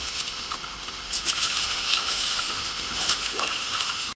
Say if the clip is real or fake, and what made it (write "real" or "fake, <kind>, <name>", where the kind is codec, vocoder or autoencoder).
fake, autoencoder, DAC-VAE